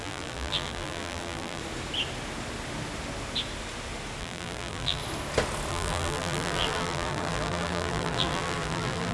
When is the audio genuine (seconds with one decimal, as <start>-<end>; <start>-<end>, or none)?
1.6-4.2; 5.0-5.7